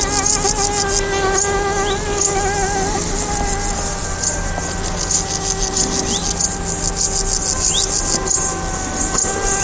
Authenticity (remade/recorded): recorded